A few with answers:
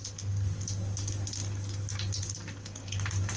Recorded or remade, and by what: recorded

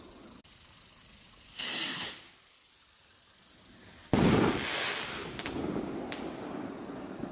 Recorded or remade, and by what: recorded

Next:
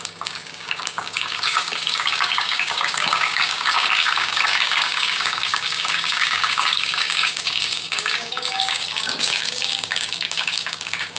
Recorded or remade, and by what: remade, codec, DAC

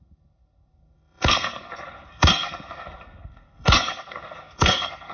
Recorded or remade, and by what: remade, codec, SNAC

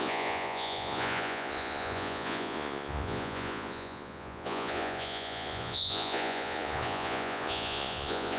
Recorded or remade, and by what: remade, vocoder, Vocos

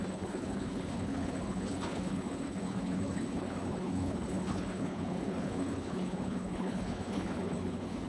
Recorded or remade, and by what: remade, codec, HILCodec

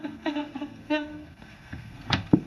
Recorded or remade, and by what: remade, codec, SNAC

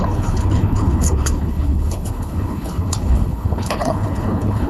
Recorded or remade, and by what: remade, codec, HILCodec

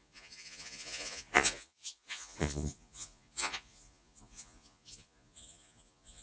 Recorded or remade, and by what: remade, vocoder, Vocos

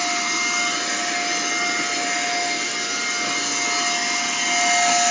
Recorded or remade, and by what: recorded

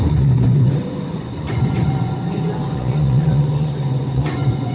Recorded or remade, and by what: remade, vocoder, Vocos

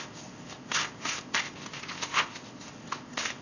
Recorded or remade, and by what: remade, codec, ZipCodec